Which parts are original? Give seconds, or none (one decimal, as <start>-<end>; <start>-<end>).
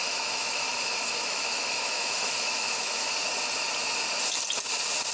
3.1-5.1